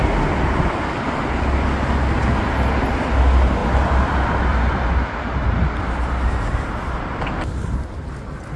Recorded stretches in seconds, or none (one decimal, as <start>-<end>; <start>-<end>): 0.0-3.6; 4.8-8.6